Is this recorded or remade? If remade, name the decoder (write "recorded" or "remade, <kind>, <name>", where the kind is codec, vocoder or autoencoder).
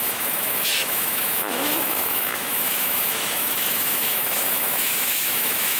remade, autoencoder, DAC-VAE